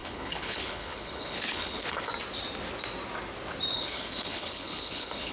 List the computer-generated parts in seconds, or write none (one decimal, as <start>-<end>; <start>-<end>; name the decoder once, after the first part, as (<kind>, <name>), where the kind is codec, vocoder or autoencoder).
0.0-2.1 (codec, HILCodec); 3.7-5.3